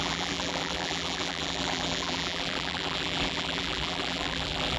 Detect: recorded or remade remade